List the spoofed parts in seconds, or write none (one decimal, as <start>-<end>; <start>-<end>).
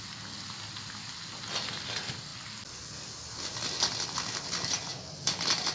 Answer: none